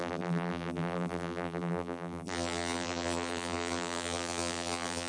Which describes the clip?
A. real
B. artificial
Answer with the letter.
B